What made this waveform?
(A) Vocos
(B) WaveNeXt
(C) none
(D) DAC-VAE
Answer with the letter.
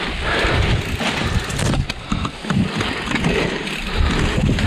C